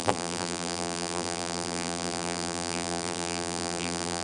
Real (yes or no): no